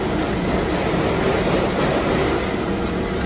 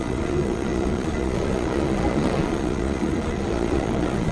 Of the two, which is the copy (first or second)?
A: second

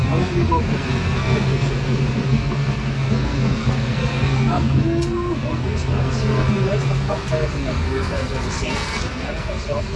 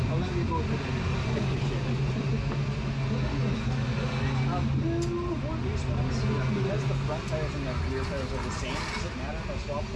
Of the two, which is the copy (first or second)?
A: first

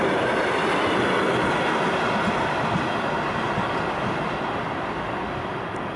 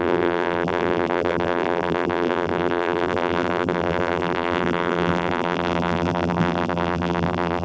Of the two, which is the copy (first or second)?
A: second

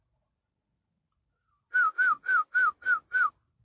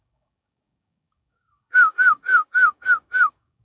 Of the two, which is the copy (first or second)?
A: second